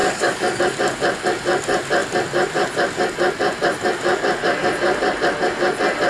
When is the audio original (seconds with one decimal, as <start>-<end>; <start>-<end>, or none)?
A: 0.6-6.1